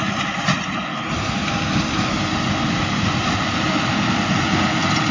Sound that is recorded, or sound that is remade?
recorded